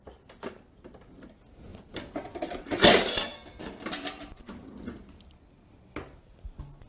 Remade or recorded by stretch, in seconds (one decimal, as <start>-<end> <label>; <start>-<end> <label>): 0.0-1.7 recorded; 1.7-2.5 remade; 2.5-3.3 recorded; 3.3-5.7 remade; 5.7-6.9 recorded